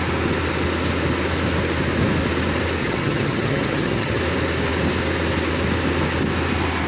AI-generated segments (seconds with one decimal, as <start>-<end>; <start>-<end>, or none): 2.8-4.2

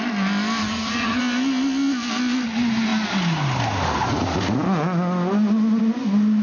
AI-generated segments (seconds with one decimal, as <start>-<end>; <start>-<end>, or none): 0.6-1.2

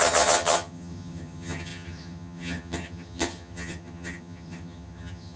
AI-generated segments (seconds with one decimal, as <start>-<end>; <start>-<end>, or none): 0.0-5.4

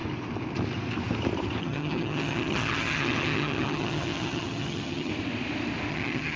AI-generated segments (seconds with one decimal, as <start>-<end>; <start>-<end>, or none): 1.6-5.1; 5.9-6.4

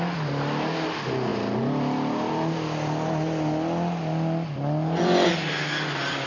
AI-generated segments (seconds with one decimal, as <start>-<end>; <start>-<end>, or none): none

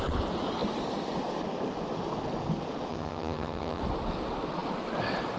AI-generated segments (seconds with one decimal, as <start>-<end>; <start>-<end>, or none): 2.9-3.8

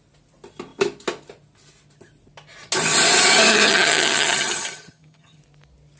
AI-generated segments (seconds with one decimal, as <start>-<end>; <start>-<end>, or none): 3.5-5.4